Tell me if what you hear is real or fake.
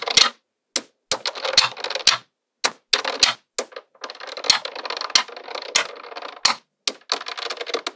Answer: real